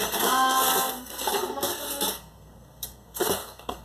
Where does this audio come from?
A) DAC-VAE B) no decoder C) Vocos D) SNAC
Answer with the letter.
D